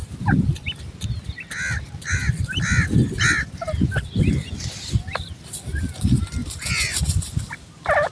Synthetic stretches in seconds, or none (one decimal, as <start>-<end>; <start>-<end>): 0.0-0.9; 6.4-7.0